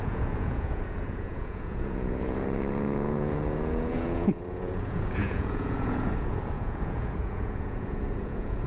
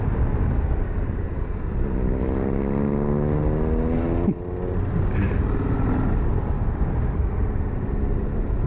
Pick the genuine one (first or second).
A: second